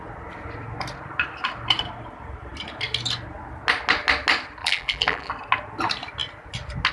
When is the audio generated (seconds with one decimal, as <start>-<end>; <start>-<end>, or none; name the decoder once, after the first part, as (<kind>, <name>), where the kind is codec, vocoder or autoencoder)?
4.6-5.3 (vocoder, BigVGAN v2)